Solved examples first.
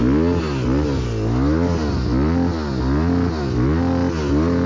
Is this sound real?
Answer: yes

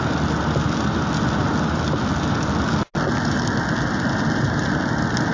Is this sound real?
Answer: yes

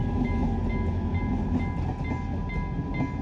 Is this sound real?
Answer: yes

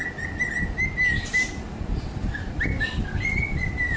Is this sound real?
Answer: yes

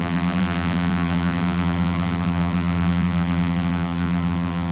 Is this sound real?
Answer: no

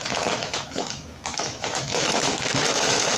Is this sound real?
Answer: no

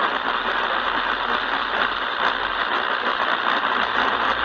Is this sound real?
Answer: yes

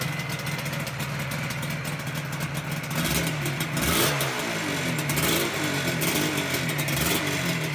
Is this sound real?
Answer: yes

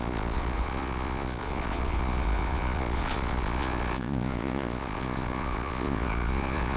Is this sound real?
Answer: no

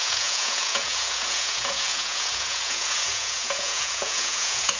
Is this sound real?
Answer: no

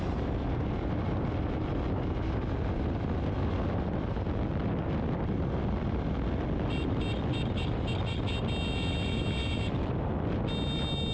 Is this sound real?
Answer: yes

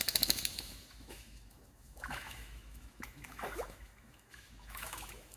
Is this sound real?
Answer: no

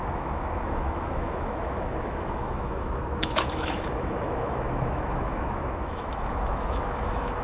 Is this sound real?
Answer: no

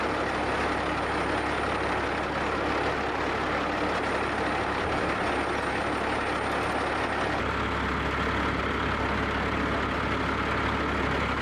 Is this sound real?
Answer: yes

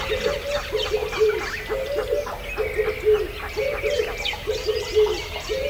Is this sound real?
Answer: yes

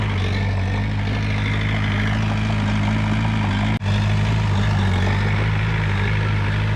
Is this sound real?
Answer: yes